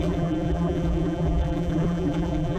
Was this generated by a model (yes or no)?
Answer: yes